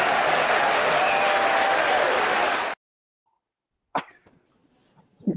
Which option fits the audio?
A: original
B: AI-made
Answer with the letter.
A